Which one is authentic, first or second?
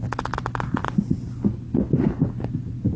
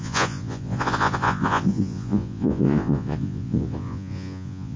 first